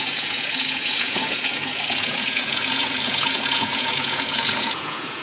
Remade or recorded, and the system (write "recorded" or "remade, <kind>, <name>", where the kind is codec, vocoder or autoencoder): remade, vocoder, Vocos